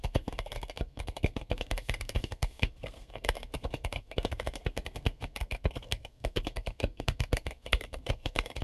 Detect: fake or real fake